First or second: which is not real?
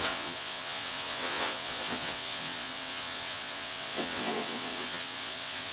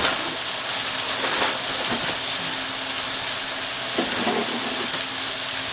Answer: first